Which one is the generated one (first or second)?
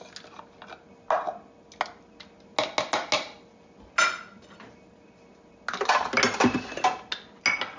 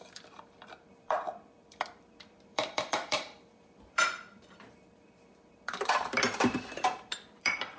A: second